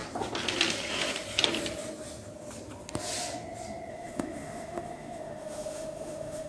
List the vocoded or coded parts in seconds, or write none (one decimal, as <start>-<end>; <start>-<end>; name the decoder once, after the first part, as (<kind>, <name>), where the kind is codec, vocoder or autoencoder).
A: 3.9-6.5 (autoencoder, DAC-VAE)